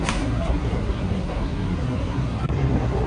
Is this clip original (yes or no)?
no